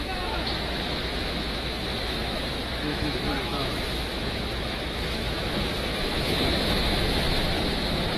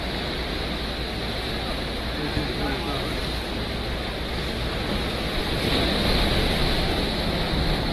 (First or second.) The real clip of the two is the second